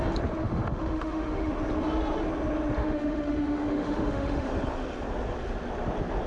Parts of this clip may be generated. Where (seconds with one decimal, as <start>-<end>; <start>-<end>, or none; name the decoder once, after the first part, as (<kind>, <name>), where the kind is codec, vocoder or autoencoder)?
0.4-1.5 (autoencoder, DAC-VAE); 2.8-4.5